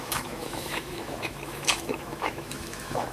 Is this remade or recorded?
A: remade